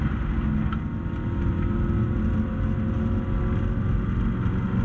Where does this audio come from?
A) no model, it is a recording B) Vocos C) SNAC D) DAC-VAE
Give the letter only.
A